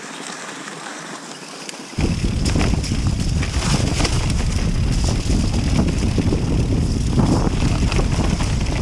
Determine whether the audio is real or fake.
real